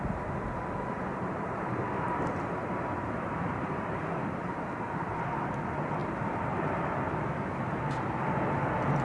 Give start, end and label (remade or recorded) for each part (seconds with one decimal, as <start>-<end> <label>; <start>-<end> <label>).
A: 0.0-1.1 recorded; 1.1-4.5 remade; 4.5-6.0 recorded; 6.0-6.6 remade; 6.6-9.0 recorded